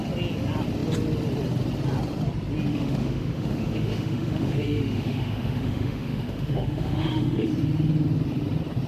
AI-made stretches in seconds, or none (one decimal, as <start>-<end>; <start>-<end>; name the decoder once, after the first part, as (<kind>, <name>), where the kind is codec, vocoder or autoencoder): 2.7-7.5 (autoencoder, DAC-VAE)